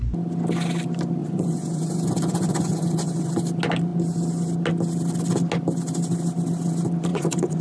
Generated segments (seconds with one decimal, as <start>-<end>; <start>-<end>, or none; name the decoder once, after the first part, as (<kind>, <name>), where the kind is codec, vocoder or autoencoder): 1.2-3.3 (vocoder, Vocos); 7.1-7.6